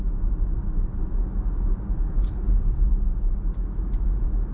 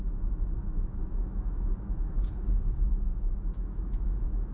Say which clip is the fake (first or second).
second